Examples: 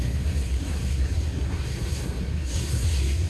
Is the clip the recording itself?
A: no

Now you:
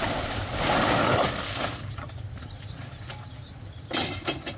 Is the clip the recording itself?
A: yes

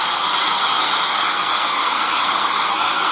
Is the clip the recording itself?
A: no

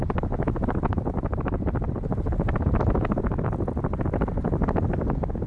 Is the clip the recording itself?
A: yes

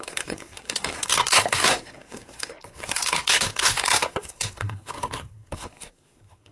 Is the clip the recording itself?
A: no